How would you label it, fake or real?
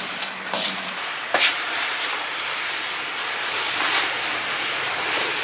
real